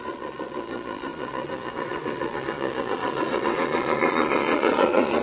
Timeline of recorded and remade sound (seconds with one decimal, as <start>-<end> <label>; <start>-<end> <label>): 0.0-5.2 remade